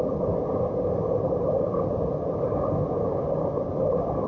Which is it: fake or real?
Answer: real